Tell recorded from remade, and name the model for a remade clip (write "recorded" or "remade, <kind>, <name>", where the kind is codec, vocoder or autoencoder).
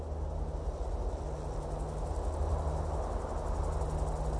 recorded